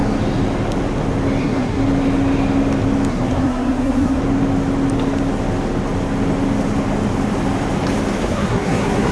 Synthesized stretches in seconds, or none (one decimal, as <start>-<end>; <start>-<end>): 1.4-1.8; 3.1-4.2; 8.2-9.1